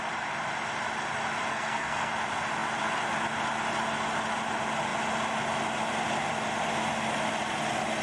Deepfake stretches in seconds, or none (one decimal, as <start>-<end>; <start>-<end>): 1.5-2.1